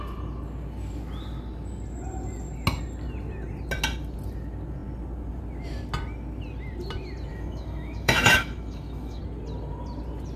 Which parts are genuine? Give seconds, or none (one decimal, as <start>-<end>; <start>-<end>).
0.0-7.3; 9.2-10.4